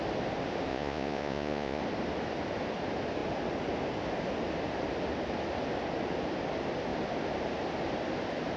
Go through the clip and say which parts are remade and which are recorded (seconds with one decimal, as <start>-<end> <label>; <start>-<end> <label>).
0.0-0.7 recorded; 0.7-1.8 remade; 1.8-8.6 recorded